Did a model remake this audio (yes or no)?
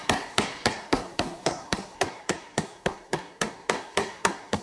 yes